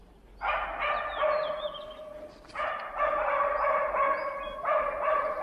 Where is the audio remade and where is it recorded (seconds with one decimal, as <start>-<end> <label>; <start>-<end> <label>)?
0.0-5.4 recorded